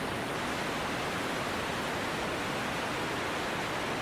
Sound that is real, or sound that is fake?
real